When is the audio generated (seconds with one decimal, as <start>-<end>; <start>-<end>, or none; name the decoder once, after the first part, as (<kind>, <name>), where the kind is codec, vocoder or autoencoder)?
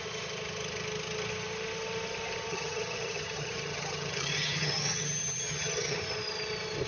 2.5-6.0 (vocoder, HiFi-GAN)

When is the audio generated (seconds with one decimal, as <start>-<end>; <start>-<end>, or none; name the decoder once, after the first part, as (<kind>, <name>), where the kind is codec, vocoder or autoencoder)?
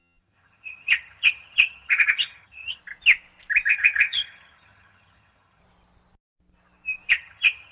0.0-2.8 (vocoder, HiFi-GAN); 3.7-5.6; 7.1-7.7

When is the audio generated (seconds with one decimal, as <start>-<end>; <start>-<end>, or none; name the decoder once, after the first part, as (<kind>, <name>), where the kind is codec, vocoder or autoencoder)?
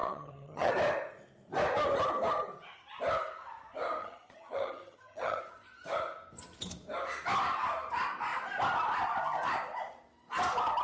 0.0-0.7 (vocoder, HiFi-GAN); 4.0-5.4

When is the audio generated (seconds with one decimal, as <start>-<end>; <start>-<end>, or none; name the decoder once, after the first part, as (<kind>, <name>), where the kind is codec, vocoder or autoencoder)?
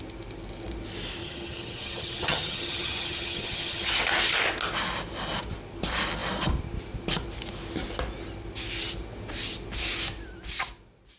1.2-3.9 (vocoder, HiFi-GAN)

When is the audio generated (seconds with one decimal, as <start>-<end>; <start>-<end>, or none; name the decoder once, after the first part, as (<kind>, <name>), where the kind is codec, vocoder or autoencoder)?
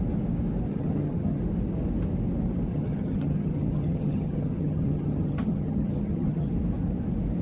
0.7-1.4 (vocoder, HiFi-GAN); 2.7-6.5